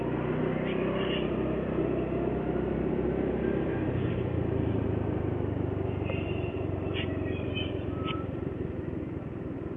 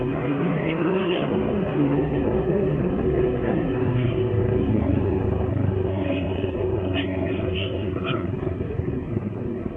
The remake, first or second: second